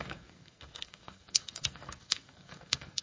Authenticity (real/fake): fake